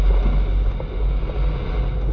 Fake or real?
real